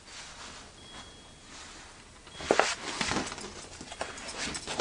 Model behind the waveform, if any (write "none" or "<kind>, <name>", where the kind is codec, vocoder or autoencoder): none